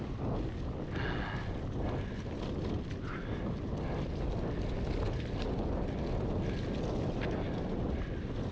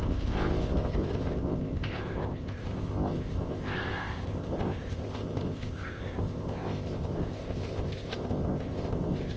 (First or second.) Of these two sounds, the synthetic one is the second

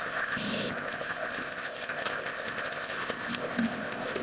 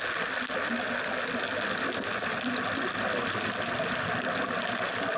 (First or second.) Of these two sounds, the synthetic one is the first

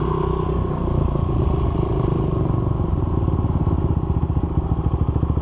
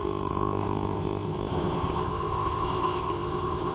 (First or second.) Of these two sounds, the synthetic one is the second